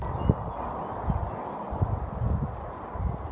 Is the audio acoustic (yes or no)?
yes